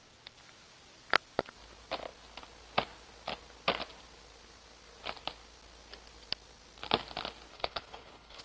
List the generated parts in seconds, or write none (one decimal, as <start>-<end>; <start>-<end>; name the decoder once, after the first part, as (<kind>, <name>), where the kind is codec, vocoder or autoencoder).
7.5-8.4 (codec, HILCodec)